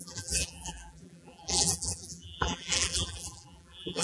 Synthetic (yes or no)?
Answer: yes